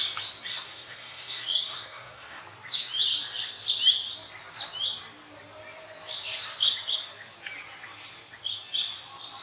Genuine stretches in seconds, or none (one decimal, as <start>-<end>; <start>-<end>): 0.0-0.5; 2.4-9.4